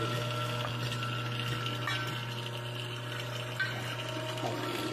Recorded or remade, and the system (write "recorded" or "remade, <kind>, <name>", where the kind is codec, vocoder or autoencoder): recorded